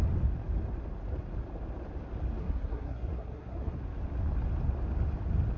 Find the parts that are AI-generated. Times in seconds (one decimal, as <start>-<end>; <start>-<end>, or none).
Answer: 2.4-3.8